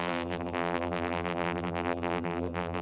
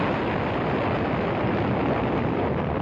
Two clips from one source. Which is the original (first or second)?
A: second